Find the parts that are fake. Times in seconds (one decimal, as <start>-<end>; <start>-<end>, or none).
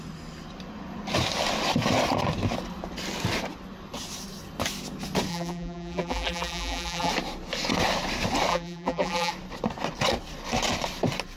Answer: 5.3-7.1; 8.5-9.3